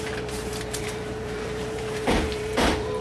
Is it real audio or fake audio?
fake